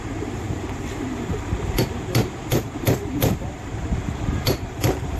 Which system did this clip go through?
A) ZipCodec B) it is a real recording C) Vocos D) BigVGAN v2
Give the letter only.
D